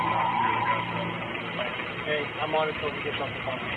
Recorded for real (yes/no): yes